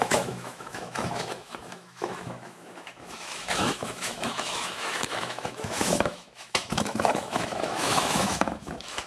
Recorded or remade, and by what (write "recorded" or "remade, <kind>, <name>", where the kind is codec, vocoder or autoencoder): remade, autoencoder, DAC-VAE